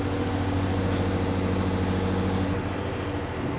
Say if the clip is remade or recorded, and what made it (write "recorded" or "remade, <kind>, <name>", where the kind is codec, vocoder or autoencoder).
recorded